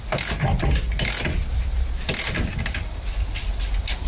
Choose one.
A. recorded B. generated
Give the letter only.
A